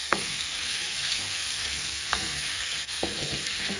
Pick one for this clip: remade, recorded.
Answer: remade